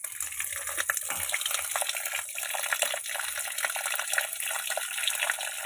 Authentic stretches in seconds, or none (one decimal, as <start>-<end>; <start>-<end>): 0.0-5.7